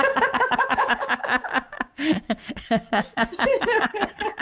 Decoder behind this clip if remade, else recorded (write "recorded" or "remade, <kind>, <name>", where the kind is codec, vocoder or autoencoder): remade, codec, DAC